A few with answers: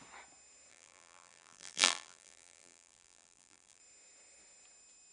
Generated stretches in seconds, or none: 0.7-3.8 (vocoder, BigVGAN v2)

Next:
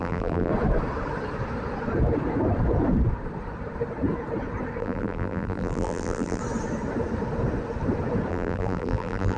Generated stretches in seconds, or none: 0.0-0.5 (vocoder, BigVGAN v2); 4.8-6.4; 8.3-9.4

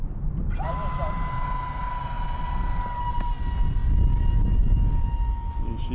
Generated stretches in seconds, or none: none

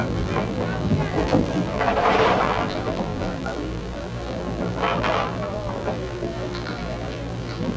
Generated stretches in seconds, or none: 0.0-1.9 (vocoder, BigVGAN v2); 2.4-7.8

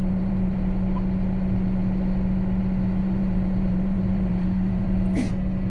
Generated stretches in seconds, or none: 0.0-0.6 (vocoder, BigVGAN v2); 3.0-5.3